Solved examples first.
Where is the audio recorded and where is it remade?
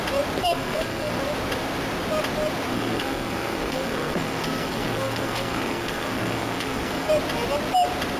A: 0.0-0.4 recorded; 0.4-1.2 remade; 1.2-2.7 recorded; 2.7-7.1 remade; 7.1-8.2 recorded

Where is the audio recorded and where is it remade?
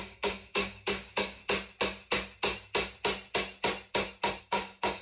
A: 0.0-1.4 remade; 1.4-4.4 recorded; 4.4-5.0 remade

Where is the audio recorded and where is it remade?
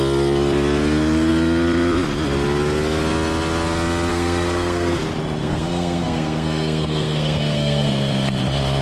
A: 0.0-4.1 recorded; 4.1-5.0 remade; 5.0-5.4 recorded; 5.4-7.9 remade; 7.9-8.8 recorded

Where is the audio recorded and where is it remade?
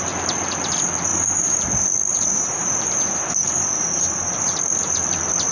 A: 0.0-1.1 recorded; 1.1-1.6 remade; 1.6-2.1 recorded; 2.1-4.3 remade; 4.3-5.5 recorded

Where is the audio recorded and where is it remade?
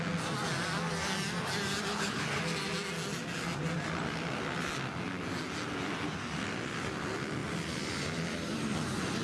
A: 0.0-1.9 recorded; 1.9-2.4 remade; 2.4-9.2 recorded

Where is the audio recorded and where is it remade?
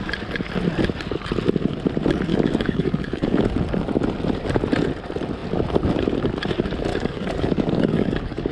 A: 0.0-2.3 recorded; 2.3-3.4 remade; 3.4-6.9 recorded; 6.9-8.5 remade